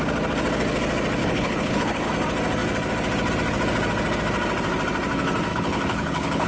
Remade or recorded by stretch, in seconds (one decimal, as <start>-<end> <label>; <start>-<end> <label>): 0.0-1.2 recorded; 1.2-2.1 remade; 2.1-5.5 recorded; 5.5-6.5 remade